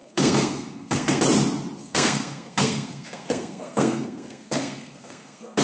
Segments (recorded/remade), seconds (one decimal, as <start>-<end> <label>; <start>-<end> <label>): 0.0-1.2 remade; 1.2-1.8 recorded; 1.8-5.6 remade